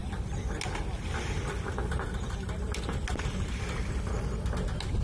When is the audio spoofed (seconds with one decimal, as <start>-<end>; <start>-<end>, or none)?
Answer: none